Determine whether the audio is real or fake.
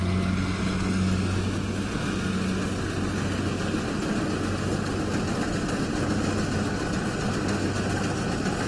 real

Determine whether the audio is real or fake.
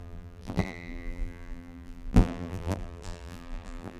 fake